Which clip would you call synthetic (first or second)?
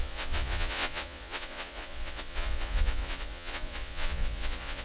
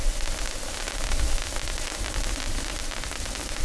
first